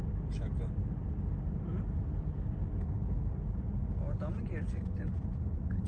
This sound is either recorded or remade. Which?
recorded